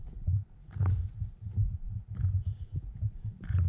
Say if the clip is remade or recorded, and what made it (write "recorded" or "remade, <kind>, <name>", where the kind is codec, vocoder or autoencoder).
remade, vocoder, Vocos